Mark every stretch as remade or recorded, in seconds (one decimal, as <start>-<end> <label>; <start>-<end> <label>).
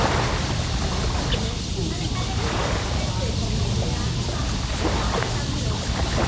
0.0-6.3 recorded